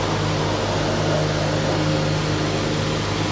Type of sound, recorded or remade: recorded